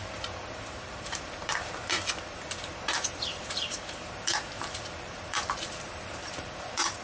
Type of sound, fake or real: fake